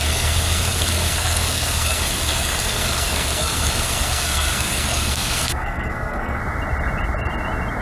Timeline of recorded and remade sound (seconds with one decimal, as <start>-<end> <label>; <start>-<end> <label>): 0.0-6.4 remade; 6.4-7.8 recorded